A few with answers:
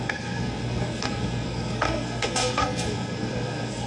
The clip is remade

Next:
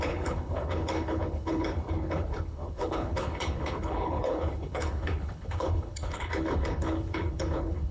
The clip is remade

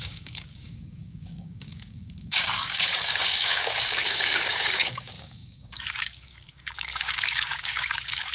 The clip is remade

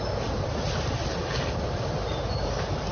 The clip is remade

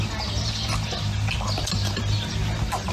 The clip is recorded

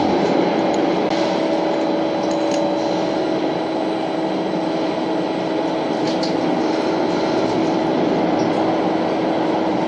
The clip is recorded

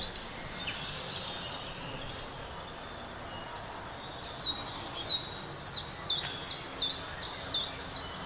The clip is recorded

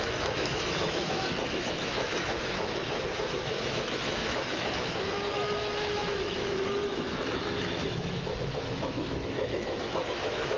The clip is remade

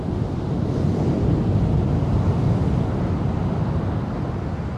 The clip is recorded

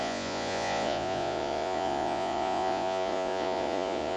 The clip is remade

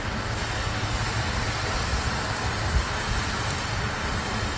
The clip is recorded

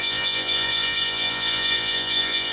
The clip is remade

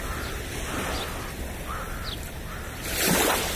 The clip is recorded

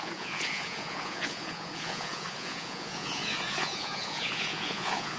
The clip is remade